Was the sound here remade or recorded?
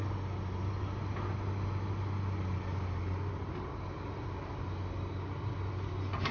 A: recorded